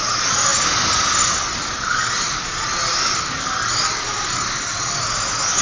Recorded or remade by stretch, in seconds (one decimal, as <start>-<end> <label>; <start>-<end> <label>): 0.0-5.6 recorded